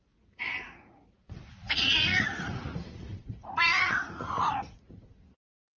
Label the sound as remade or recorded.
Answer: remade